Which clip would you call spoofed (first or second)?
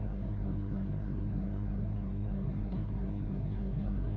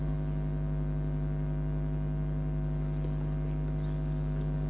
first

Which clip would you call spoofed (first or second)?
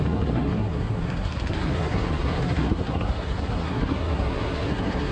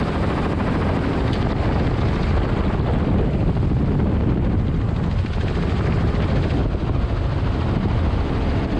first